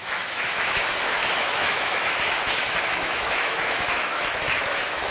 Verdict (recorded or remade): remade